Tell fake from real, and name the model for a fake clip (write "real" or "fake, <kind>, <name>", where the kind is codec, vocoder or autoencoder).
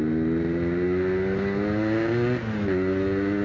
real